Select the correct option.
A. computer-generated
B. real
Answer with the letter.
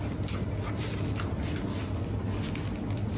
B